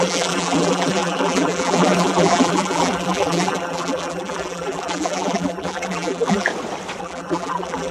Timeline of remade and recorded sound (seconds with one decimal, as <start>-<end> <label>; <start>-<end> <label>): 0.0-6.5 remade; 6.5-7.0 recorded; 7.0-7.9 remade